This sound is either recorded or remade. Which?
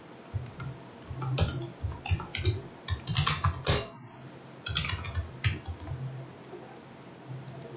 recorded